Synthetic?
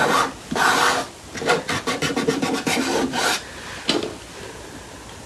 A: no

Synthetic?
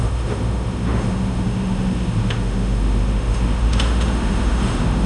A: yes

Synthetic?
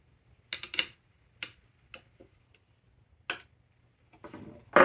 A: no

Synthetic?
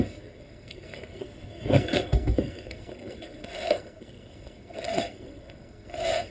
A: yes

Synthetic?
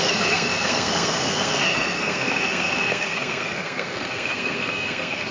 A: yes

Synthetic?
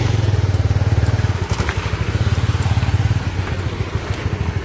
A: no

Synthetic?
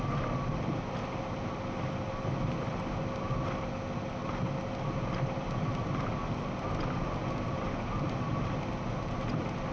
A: no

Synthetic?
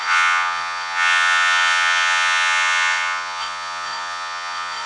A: yes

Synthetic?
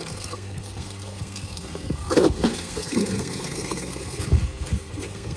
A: yes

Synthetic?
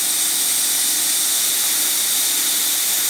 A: no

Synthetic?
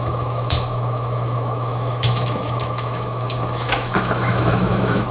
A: yes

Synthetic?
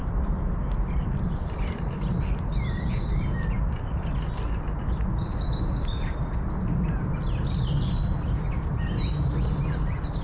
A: no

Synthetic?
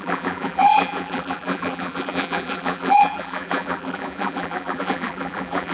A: yes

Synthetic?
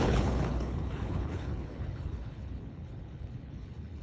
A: yes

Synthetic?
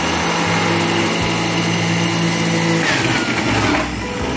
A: no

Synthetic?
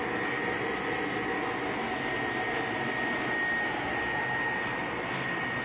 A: no